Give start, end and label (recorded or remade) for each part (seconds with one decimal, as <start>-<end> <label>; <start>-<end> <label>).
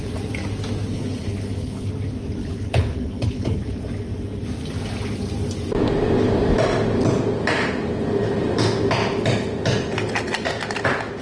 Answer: 0.0-0.9 recorded; 0.9-1.9 remade; 1.9-2.4 recorded; 2.4-3.6 remade; 3.6-11.2 recorded